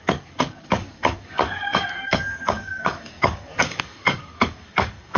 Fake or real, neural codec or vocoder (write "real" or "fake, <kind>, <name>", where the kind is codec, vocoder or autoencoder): fake, codec, DAC